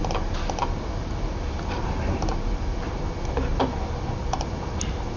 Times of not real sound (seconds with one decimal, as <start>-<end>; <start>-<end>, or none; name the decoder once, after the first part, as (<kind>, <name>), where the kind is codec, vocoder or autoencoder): none